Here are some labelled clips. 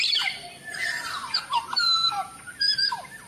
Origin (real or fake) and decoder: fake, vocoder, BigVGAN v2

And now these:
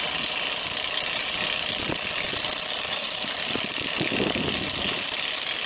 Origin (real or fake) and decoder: fake, vocoder, BigVGAN v2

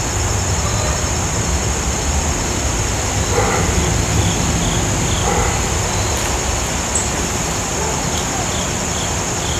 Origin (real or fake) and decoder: real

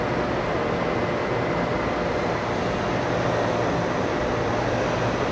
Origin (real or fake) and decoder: real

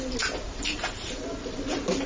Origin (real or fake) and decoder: real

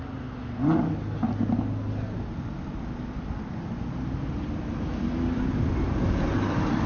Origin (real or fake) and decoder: real